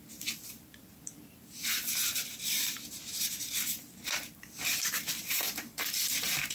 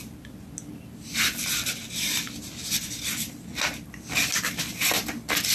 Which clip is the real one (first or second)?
second